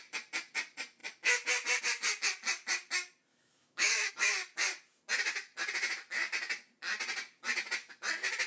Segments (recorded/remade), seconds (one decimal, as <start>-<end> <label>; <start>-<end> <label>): 0.0-3.3 recorded; 3.3-4.1 remade; 4.1-8.5 recorded